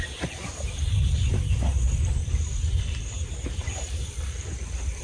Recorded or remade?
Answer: remade